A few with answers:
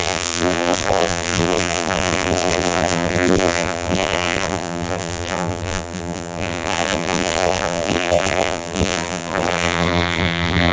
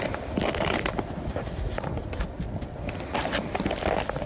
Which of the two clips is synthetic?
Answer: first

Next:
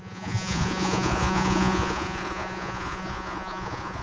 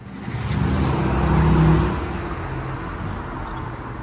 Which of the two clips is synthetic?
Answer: first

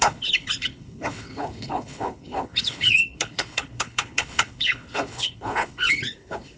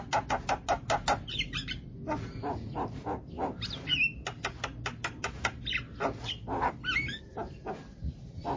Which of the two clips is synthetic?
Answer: first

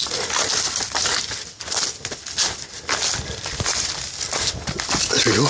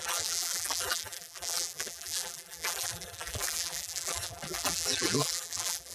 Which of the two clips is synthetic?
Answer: second